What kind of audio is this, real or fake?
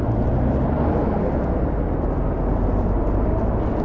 real